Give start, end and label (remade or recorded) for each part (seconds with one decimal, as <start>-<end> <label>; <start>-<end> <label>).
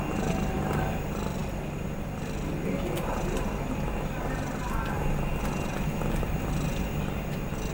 0.0-7.7 recorded